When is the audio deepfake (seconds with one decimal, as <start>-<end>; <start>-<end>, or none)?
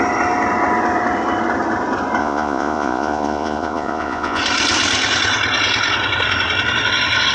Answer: 2.2-4.4